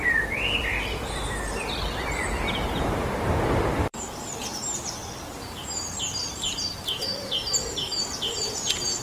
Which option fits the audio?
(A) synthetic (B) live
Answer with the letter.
A